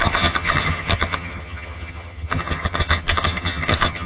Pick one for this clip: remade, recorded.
remade